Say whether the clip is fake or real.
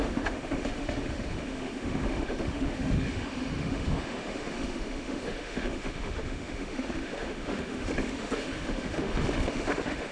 fake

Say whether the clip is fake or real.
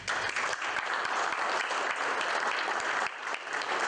real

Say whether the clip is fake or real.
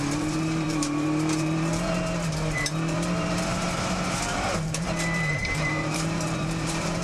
fake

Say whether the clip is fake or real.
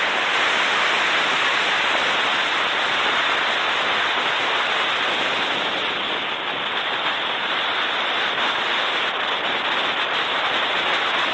real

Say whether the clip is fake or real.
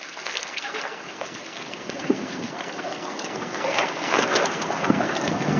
fake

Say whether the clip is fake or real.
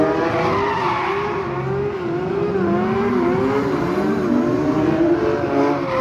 real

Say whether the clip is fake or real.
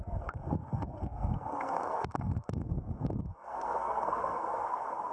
fake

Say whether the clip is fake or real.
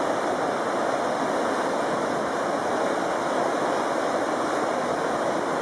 real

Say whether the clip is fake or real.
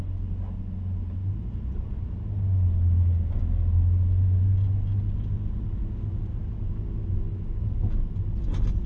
real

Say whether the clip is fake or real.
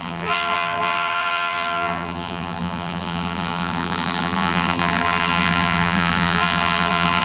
fake